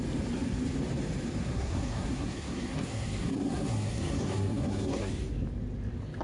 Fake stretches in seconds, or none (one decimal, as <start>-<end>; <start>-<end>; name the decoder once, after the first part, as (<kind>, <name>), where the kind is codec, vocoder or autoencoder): 1.4-5.1 (codec, SNAC)